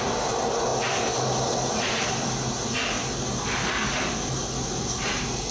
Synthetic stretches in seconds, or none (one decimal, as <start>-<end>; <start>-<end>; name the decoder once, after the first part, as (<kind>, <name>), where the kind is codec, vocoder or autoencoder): none

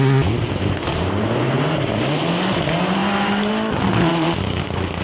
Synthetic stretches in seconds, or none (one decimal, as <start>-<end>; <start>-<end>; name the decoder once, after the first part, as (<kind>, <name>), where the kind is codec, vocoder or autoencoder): 0.9-2.2 (vocoder, BigVGAN v2); 3.0-3.5; 4.1-4.6